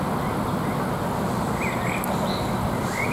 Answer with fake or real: real